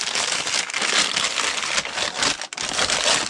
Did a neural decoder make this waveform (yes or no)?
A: no